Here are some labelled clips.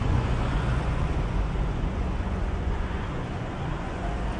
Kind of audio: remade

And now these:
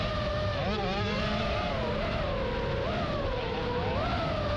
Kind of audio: recorded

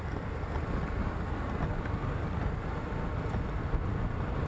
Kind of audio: recorded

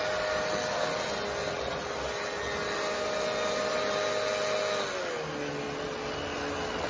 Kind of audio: recorded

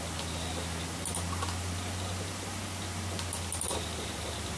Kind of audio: recorded